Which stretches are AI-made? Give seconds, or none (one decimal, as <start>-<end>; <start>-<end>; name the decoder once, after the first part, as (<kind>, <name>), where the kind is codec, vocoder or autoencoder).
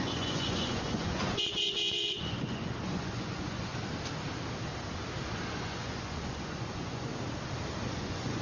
0.0-3.7 (vocoder, Vocos); 5.3-7.1; 7.9-8.4